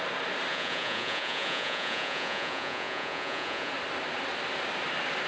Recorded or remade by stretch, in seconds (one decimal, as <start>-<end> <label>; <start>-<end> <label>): 0.0-0.5 recorded; 0.5-3.7 remade; 3.7-5.3 recorded